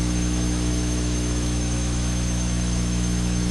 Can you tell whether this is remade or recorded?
remade